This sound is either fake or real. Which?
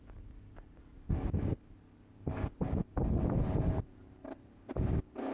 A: real